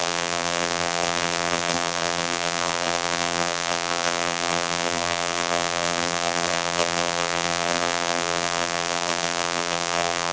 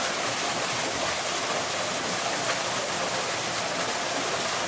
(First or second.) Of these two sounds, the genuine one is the second